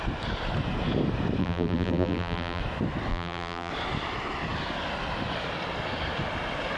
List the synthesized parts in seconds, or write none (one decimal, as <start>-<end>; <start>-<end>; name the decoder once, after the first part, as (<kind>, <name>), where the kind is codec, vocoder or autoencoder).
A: 1.4-2.6 (vocoder, BigVGAN v2); 3.1-3.7